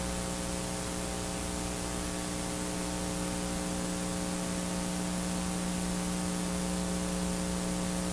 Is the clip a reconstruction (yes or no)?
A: no